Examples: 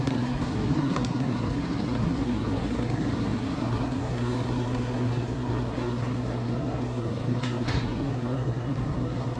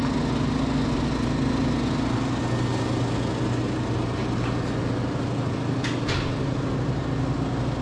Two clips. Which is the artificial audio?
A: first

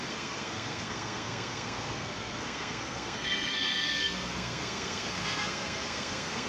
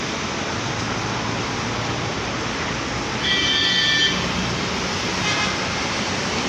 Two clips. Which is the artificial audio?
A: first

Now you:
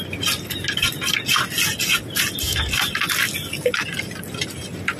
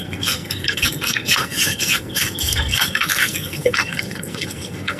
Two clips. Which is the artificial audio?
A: second